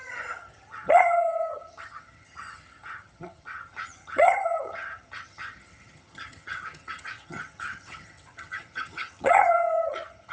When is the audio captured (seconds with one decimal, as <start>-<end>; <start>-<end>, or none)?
none